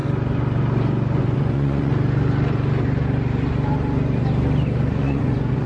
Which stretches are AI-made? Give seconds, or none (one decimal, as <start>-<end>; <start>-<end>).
1.2-1.9; 4.9-5.7